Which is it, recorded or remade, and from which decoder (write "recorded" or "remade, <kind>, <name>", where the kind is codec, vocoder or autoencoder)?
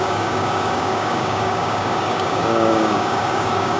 remade, codec, DAC